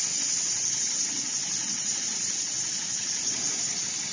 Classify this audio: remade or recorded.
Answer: recorded